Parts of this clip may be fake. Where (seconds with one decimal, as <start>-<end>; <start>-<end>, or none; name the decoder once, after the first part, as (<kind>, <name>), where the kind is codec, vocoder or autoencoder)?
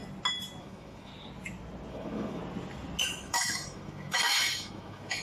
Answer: 0.6-1.1 (autoencoder, DAC-VAE); 1.9-2.4; 3.0-5.2